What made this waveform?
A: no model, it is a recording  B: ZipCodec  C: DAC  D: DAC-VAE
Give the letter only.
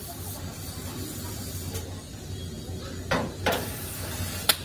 A